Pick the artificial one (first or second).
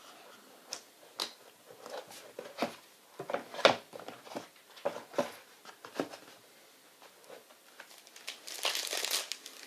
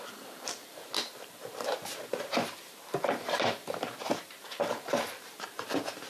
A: second